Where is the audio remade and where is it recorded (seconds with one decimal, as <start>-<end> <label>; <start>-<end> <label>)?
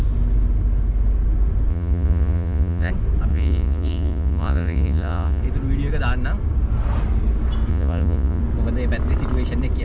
0.0-1.7 recorded; 1.7-2.9 remade; 2.9-3.3 recorded; 3.3-5.4 remade; 5.4-7.7 recorded; 7.7-8.4 remade; 8.4-9.8 recorded